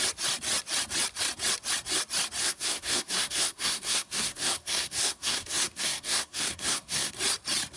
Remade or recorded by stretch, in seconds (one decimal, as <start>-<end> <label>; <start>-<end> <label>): 0.0-2.4 recorded; 2.4-7.1 remade; 7.1-7.8 recorded